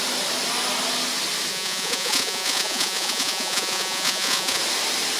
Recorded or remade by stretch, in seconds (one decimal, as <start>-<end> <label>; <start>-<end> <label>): 0.0-1.5 recorded; 1.5-4.6 remade; 4.6-5.2 recorded